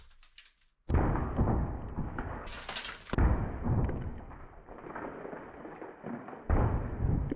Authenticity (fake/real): real